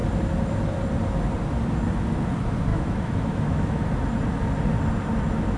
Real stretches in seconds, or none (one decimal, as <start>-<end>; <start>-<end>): 0.0-2.7; 3.9-5.6